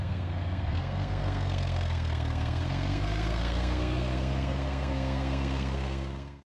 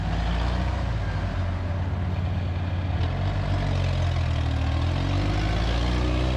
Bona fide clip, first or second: second